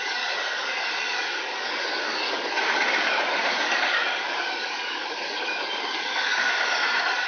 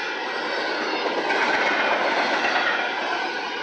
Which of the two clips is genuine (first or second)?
second